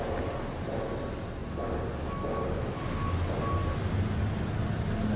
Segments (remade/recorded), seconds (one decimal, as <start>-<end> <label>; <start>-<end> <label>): 0.0-5.2 recorded